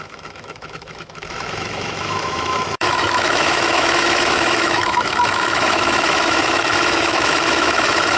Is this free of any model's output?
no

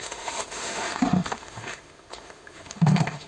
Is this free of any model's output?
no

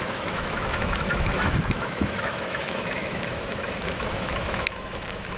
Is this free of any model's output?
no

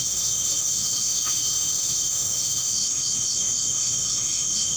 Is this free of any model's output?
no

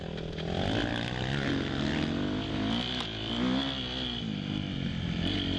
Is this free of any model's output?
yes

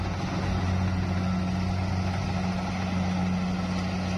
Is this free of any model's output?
yes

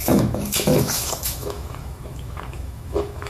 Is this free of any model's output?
no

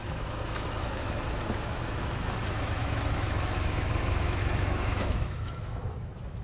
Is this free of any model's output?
no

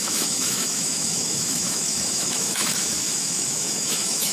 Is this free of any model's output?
no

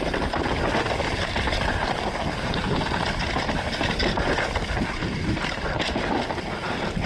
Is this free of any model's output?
yes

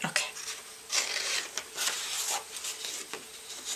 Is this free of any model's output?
yes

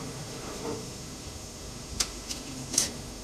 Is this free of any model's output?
no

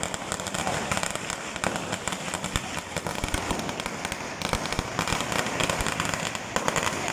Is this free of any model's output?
yes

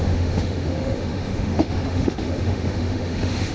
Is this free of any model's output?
no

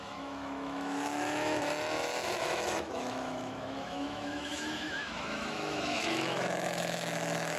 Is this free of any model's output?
no